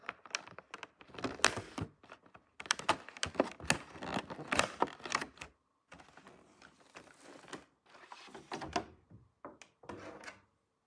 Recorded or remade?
recorded